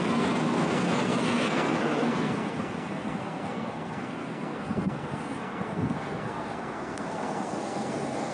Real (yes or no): no